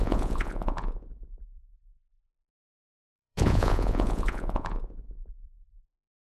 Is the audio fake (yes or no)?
yes